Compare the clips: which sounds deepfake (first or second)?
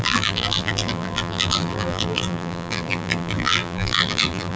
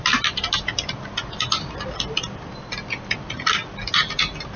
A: first